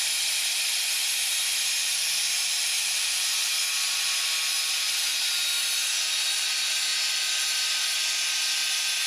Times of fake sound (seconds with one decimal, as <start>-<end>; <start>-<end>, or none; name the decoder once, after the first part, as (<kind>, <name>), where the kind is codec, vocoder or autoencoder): none